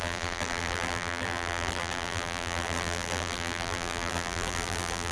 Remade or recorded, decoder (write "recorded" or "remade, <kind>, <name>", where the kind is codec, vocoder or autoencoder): remade, vocoder, BigVGAN v2